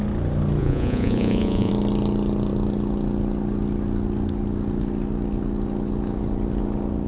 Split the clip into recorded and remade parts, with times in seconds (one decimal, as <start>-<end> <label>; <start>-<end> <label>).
0.0-0.6 recorded; 0.6-1.7 remade; 1.7-7.1 recorded